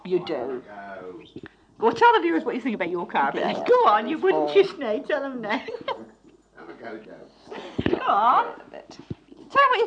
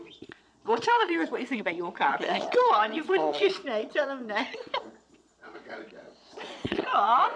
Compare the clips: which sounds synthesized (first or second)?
second